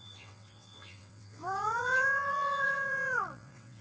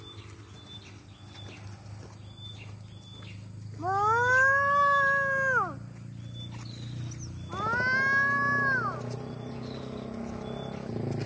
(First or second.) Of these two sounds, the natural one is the second